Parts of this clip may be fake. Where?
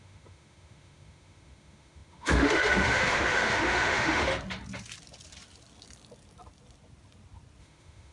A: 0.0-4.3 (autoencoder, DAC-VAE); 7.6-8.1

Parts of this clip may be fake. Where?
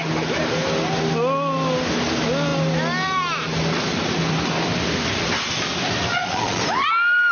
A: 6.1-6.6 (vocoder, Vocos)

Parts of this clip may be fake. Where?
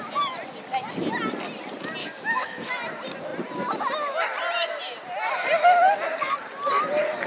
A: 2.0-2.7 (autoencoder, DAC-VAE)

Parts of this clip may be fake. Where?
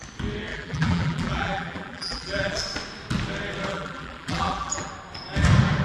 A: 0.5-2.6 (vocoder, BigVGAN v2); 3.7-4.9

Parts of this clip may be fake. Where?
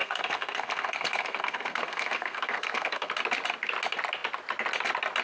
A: 0.0-3.1 (codec, SNAC)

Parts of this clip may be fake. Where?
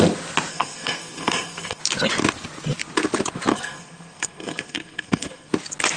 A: 0.5-1.8 (codec, SNAC); 3.5-5.5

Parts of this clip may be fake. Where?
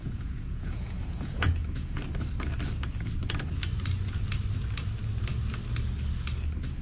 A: 0.0-2.0 (vocoder, Vocos)